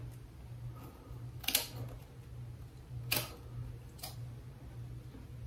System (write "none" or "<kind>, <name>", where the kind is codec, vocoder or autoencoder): none